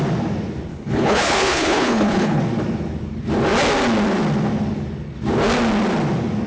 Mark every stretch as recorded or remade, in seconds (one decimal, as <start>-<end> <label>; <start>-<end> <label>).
0.0-0.7 recorded; 0.7-2.4 remade; 2.4-6.5 recorded